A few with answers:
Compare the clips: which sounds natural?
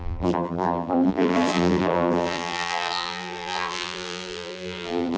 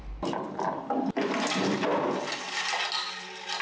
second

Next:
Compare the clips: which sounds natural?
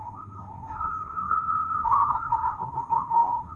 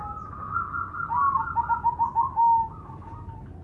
second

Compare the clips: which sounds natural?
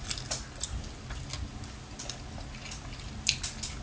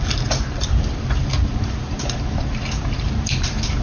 first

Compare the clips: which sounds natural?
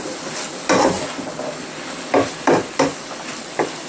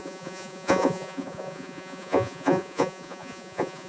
first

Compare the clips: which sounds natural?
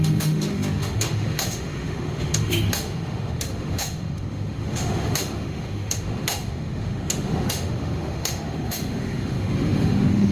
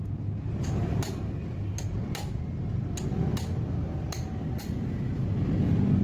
second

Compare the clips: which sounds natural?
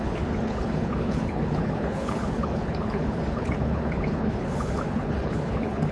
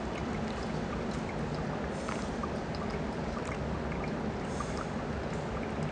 second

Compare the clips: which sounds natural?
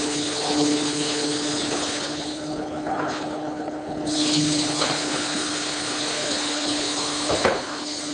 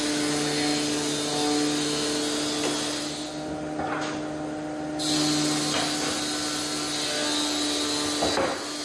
second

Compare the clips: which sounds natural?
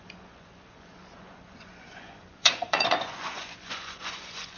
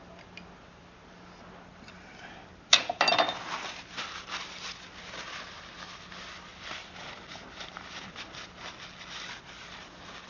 second